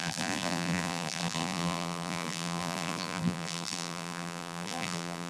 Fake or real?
fake